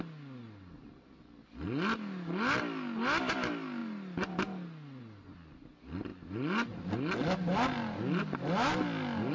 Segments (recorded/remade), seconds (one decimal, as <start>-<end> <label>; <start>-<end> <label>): 0.0-9.3 recorded